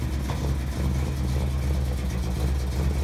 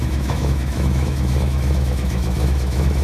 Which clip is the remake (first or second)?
second